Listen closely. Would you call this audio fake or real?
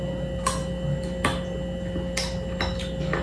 real